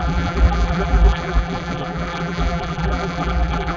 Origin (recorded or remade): remade